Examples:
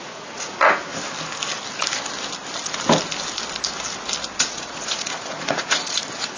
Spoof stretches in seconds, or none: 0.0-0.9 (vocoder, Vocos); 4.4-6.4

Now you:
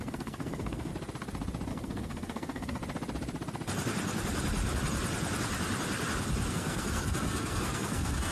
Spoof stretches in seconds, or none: 0.0-0.9 (codec, SNAC); 1.7-2.8; 6.5-8.3

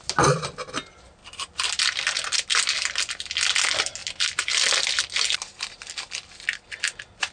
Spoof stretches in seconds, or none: none